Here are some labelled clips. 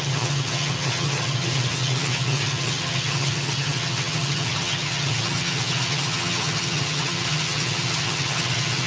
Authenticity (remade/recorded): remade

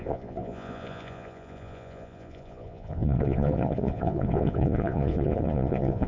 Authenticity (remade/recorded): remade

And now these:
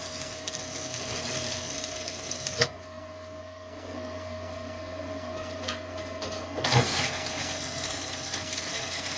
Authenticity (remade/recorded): remade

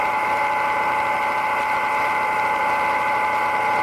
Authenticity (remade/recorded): recorded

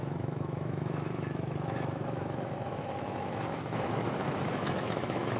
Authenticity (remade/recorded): remade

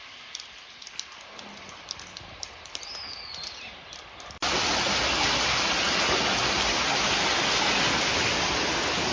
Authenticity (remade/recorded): recorded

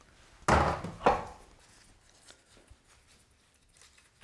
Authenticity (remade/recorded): recorded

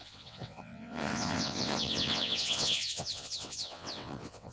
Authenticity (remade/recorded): remade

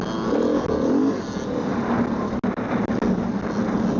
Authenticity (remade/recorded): recorded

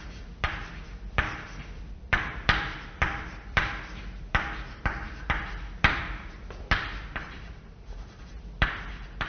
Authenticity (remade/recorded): remade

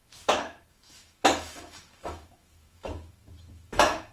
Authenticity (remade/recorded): remade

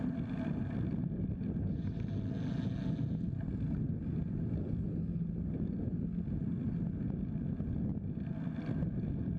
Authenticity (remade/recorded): recorded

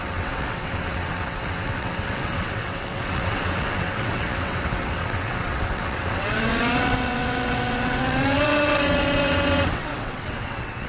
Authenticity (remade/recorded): remade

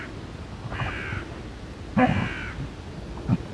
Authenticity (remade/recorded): recorded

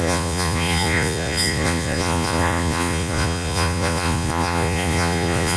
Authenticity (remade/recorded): remade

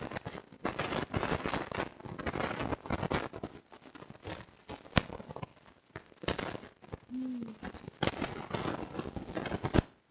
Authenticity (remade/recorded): recorded